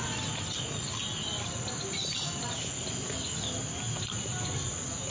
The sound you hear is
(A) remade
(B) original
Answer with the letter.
B